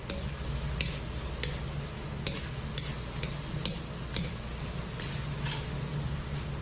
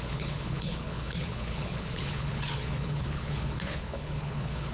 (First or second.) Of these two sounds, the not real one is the second